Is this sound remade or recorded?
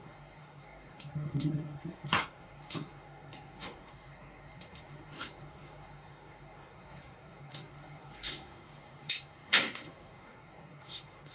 remade